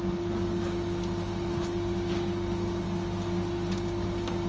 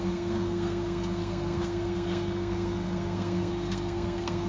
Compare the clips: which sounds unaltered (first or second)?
first